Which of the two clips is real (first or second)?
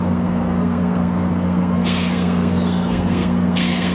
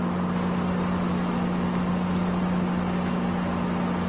second